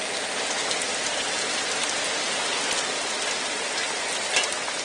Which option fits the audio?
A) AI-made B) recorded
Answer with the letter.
B